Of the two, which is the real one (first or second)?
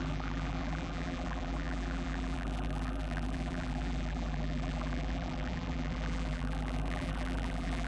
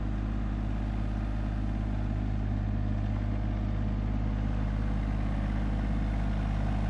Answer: second